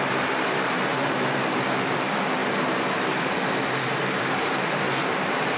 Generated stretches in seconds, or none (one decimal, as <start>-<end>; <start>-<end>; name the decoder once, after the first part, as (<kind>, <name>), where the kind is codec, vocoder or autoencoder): 0.0-2.4 (vocoder, BigVGAN v2); 3.2-5.6